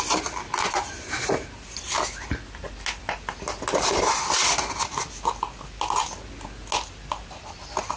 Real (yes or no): yes